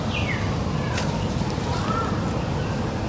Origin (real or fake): real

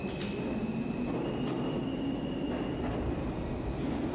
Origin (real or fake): real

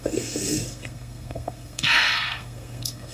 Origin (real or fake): fake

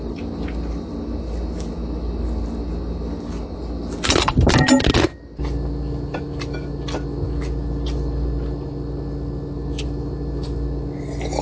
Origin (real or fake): real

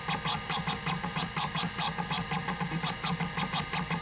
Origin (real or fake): real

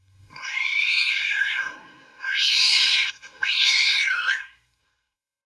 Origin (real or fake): fake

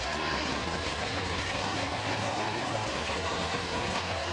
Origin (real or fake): fake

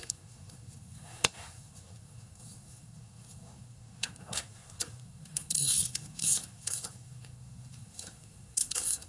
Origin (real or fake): fake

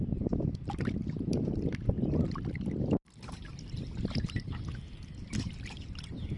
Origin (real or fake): real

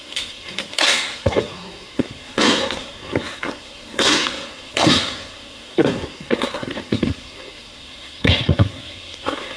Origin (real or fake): fake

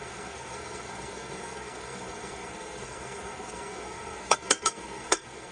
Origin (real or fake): fake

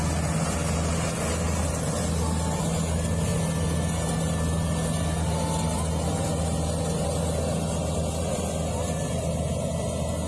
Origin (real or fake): real